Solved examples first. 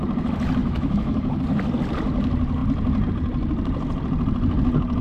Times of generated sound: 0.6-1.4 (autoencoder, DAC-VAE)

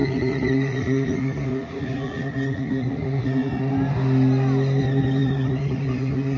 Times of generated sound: 0.0-3.7 (vocoder, Vocos); 5.2-6.4

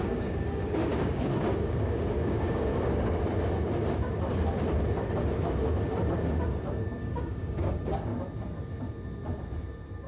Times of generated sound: 0.0-2.7 (codec, DAC); 7.0-8.1

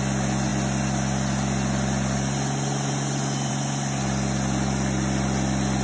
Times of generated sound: none

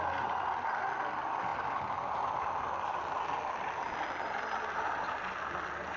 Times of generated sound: none

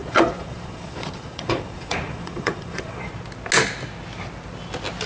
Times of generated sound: 0.0-3.1 (vocoder, Vocos)

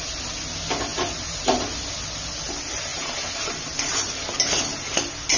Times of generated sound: 0.9-1.4 (vocoder, BigVGAN v2); 2.9-3.8